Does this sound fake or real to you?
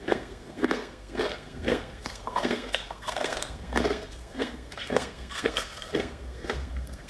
fake